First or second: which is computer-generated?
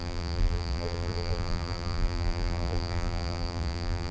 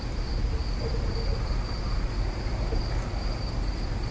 first